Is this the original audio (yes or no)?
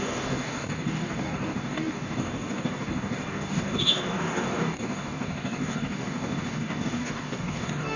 no